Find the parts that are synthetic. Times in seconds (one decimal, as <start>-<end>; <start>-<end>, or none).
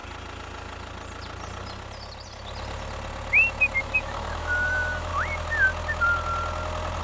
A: 3.8-5.1